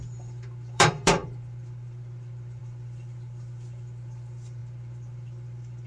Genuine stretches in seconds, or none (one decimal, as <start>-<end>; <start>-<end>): none

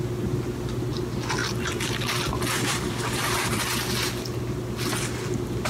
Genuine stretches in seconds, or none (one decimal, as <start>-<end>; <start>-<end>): 0.0-1.4; 3.6-5.7

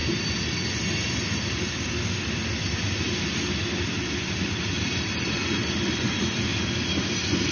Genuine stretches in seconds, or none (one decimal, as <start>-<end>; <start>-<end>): 0.0-4.2; 5.4-6.0; 6.5-7.5

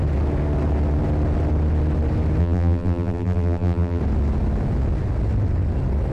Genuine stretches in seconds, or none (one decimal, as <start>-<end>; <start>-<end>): 0.0-2.4; 4.0-6.1

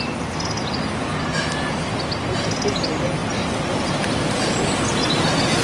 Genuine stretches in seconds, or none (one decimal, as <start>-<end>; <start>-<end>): 0.0-3.2; 4.4-5.6

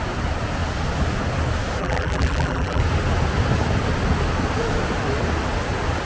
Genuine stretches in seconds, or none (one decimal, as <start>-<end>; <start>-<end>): 0.0-1.8; 2.8-6.0

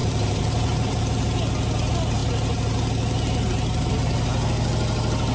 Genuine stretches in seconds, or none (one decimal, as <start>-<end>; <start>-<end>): 1.0-5.3

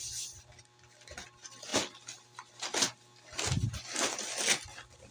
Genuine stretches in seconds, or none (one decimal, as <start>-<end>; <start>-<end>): 0.0-5.1